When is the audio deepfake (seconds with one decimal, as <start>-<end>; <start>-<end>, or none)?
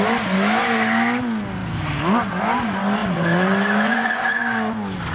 3.0-4.4